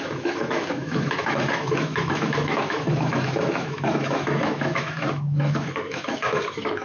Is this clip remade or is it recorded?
remade